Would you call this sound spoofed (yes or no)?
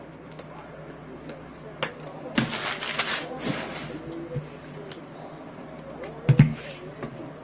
no